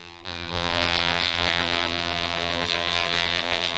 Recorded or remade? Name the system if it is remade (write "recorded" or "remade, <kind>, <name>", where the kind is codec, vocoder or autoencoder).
remade, vocoder, BigVGAN v2